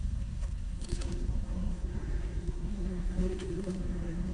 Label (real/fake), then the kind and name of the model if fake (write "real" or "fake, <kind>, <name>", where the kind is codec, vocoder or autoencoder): fake, codec, SNAC